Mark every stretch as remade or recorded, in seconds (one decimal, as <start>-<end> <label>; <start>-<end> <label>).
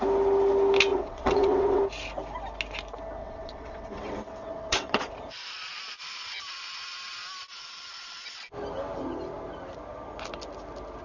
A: 0.0-0.9 recorded; 0.9-1.8 remade; 1.8-3.2 recorded; 3.2-5.1 remade; 5.1-11.0 recorded